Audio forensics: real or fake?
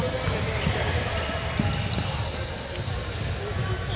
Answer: real